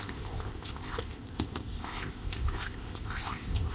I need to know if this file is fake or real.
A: fake